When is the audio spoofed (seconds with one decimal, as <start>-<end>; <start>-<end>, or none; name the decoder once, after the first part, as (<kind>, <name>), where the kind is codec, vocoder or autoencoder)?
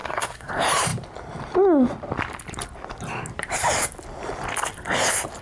0.0-0.5 (codec, SNAC)